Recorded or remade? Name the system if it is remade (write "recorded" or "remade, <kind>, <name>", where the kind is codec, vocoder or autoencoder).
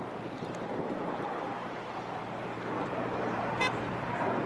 remade, vocoder, BigVGAN v2